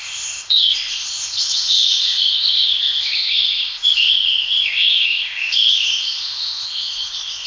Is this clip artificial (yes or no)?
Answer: yes